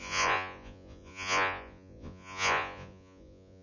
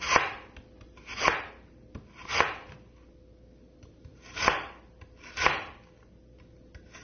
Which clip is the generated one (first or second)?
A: first